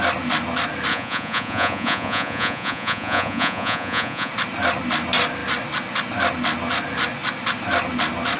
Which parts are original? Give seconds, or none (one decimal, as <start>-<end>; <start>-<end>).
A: 0.0-0.9; 4.3-8.4